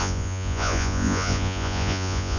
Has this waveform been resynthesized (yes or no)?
yes